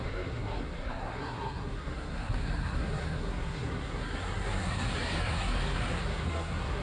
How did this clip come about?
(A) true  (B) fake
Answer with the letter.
B